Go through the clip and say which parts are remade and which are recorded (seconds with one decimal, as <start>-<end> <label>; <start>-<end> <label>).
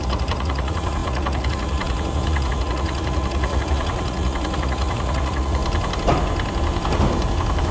0.0-5.6 remade; 5.6-7.7 recorded